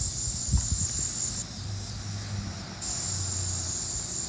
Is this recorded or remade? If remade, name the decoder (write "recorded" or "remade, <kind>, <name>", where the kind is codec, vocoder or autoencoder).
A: recorded